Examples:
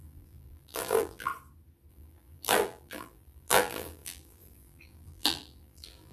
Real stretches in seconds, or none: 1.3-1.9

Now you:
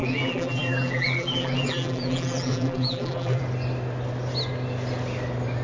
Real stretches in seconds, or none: 3.4-5.6

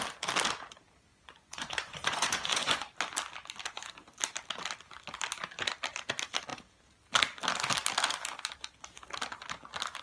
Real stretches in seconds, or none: 0.0-1.1; 2.9-10.0

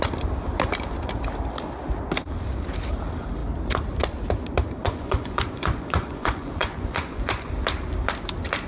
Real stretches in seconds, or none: 0.0-4.8; 7.5-8.7

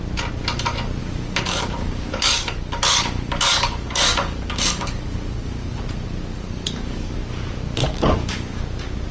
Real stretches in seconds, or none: 0.0-1.0; 5.8-6.3; 7.2-7.8; 8.6-9.1